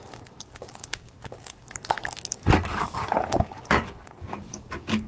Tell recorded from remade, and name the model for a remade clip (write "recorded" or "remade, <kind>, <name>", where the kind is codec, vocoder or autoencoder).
remade, codec, DAC